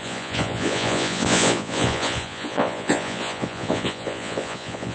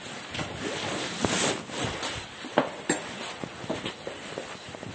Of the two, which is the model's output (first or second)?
first